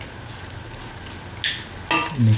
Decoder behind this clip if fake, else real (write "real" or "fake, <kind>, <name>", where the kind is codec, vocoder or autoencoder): real